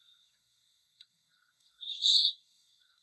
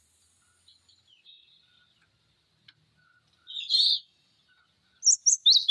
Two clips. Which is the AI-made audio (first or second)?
first